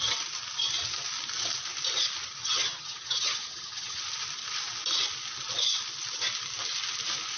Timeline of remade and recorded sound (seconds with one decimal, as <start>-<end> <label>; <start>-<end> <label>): 0.0-2.4 recorded; 2.4-4.0 remade; 4.0-7.4 recorded